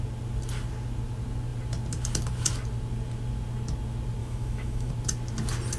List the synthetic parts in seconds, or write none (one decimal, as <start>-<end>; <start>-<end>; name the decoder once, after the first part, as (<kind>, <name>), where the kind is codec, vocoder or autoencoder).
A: 4.2-4.9 (autoencoder, DAC-VAE)